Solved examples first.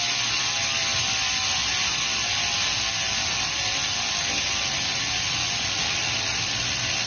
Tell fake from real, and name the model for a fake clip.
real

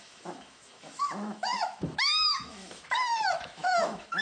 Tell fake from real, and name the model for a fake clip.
fake, autoencoder, DAC-VAE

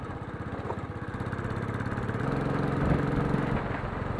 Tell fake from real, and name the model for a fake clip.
real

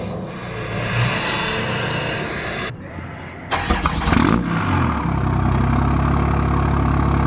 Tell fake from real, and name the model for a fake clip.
real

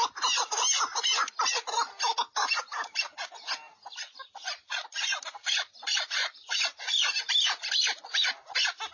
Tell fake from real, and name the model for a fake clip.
real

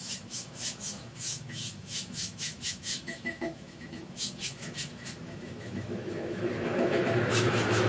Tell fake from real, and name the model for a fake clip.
fake, autoencoder, DAC-VAE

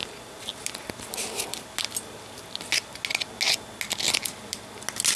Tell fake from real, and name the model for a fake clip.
real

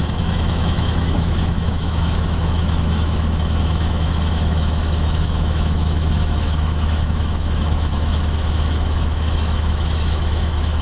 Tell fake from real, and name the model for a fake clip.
fake, autoencoder, DAC-VAE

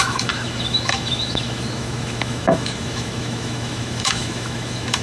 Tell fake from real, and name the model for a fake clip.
fake, autoencoder, DAC-VAE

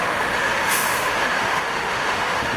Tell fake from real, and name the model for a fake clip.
fake, autoencoder, DAC-VAE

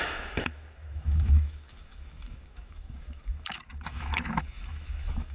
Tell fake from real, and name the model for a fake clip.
fake, autoencoder, DAC-VAE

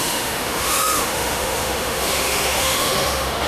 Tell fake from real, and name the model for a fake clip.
fake, autoencoder, DAC-VAE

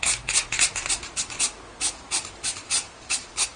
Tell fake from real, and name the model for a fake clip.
real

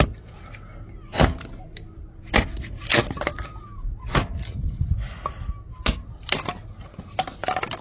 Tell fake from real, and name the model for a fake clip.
real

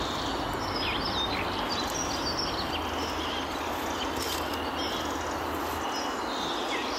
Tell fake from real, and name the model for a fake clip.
real